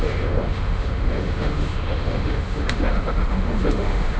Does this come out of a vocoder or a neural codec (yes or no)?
yes